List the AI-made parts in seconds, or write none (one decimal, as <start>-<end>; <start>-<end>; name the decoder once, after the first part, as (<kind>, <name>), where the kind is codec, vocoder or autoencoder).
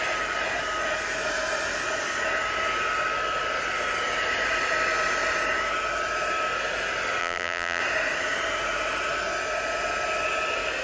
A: 7.2-7.8 (vocoder, BigVGAN v2)